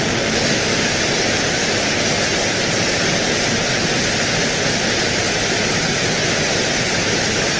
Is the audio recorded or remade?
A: recorded